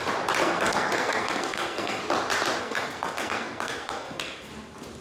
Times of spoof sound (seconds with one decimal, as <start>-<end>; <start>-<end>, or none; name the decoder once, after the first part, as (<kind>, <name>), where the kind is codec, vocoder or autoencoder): 0.4-2.0 (codec, SNAC); 2.6-4.5